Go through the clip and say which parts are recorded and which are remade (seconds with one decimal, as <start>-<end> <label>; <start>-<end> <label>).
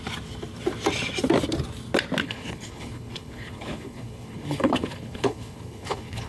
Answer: 0.0-2.2 recorded; 2.2-6.3 remade